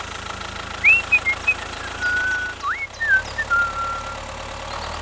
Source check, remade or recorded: recorded